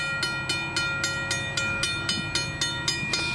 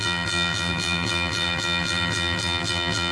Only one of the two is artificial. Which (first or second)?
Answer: second